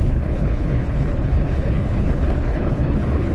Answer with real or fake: fake